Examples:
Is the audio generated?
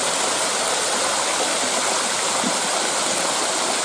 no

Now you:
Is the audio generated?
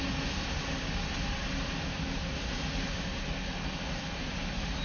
no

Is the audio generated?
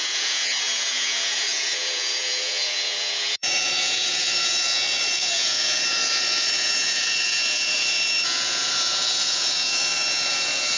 yes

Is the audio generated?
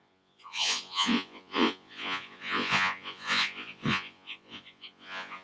yes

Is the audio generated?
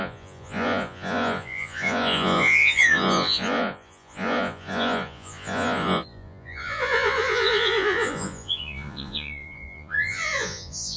yes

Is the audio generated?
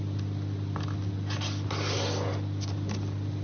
no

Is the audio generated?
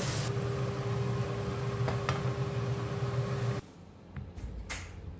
no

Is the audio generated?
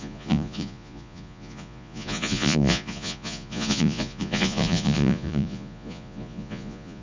yes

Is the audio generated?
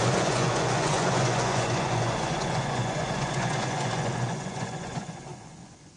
yes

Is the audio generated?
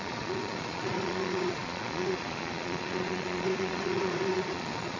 yes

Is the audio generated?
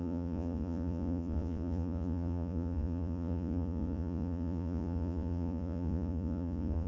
yes